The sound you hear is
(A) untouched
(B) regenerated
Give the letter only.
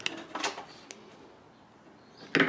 A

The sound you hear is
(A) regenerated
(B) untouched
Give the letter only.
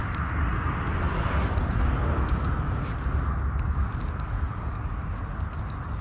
B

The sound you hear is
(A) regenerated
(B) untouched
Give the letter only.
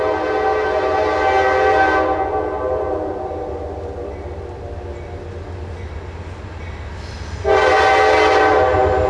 B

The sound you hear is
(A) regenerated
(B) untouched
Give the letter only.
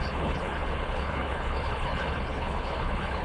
A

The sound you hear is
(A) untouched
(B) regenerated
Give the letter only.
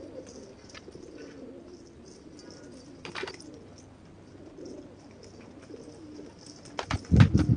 A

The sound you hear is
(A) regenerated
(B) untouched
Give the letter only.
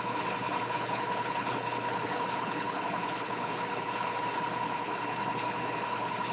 A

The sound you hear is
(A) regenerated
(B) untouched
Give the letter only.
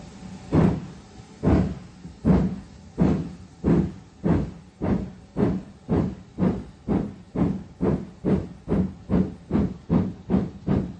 B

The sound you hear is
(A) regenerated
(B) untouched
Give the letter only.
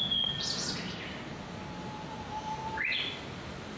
B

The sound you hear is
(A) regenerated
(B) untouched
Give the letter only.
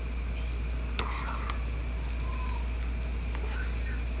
B